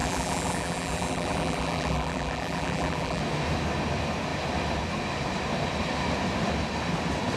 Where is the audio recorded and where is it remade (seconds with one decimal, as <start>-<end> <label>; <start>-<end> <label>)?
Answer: 0.0-3.2 remade; 3.2-7.4 recorded